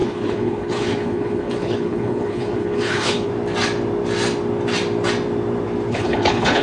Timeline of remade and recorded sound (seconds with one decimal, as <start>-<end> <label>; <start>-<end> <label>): 0.0-3.3 remade; 3.3-5.9 recorded; 5.9-6.6 remade